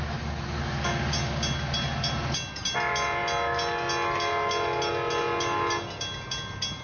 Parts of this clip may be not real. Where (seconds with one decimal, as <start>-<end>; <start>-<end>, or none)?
none